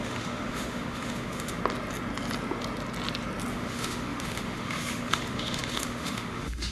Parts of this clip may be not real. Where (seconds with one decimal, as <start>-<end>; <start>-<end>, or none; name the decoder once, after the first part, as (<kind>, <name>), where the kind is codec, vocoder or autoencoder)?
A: 0.0-1.6 (autoencoder, DAC-VAE); 3.5-6.7